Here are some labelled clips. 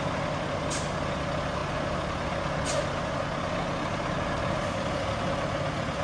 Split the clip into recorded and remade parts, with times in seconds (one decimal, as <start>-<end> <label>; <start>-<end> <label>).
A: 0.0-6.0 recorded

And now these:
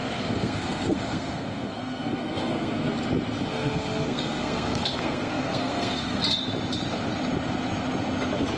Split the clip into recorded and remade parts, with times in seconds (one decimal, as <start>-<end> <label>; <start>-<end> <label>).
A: 0.0-2.9 remade; 2.9-3.5 recorded; 3.5-6.2 remade; 6.2-8.6 recorded

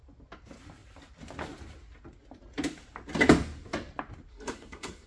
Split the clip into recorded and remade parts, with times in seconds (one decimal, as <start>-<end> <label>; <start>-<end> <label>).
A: 0.0-4.3 recorded; 4.3-5.1 remade

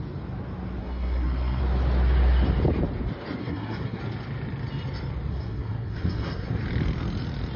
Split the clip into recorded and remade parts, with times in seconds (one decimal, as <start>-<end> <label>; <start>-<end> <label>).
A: 0.0-0.8 recorded; 0.8-1.6 remade; 1.6-3.4 recorded; 3.4-4.0 remade; 4.0-5.3 recorded; 5.3-6.6 remade; 6.6-7.6 recorded

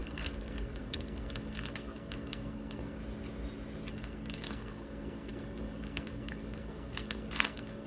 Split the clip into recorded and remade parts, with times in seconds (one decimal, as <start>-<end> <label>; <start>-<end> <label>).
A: 0.0-3.0 remade; 3.0-3.9 recorded; 3.9-7.9 remade

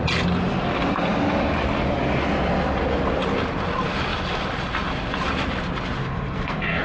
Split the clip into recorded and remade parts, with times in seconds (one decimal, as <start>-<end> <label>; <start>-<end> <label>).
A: 0.0-6.0 recorded; 6.0-6.8 remade

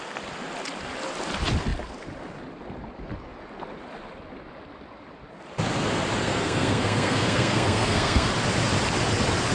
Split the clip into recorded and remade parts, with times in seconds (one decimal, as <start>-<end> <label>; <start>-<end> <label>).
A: 0.0-6.2 recorded; 6.2-8.3 remade; 8.3-9.5 recorded